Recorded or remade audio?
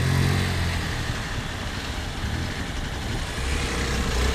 recorded